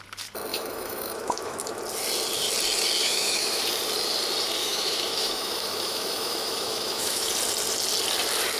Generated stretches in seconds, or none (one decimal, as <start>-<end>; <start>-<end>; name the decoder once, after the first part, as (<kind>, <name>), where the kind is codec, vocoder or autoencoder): 0.5-1.8 (autoencoder, DAC-VAE); 3.0-3.6; 4.6-7.3

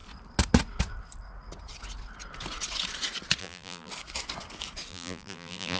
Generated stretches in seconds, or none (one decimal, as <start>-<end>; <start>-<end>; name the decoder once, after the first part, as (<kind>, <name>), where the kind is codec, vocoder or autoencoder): 3.4-3.9 (vocoder, BigVGAN v2); 4.9-5.8

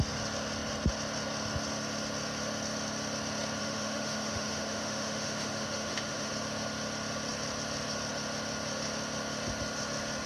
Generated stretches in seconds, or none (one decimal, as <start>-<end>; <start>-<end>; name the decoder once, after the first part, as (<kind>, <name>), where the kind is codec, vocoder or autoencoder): 3.6-6.3 (autoencoder, DAC-VAE)

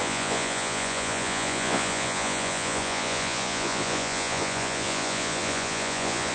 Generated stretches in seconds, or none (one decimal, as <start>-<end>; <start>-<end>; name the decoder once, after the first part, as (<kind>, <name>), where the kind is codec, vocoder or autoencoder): 0.0-6.3 (vocoder, Vocos)

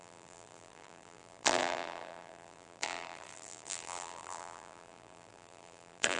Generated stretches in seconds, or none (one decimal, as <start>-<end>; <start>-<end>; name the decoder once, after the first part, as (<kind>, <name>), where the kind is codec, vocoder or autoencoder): 0.0-6.2 (vocoder, BigVGAN v2)

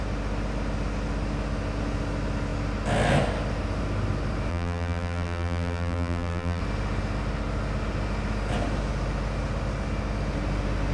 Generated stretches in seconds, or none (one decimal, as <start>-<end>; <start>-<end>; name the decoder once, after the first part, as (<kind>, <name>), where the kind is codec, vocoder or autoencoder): 4.5-6.6 (vocoder, BigVGAN v2)

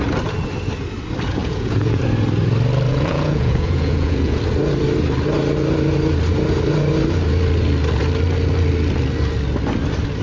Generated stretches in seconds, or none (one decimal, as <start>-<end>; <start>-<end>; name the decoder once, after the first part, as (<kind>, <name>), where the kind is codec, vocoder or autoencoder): 1.4-2.0 (vocoder, Vocos); 2.9-4.4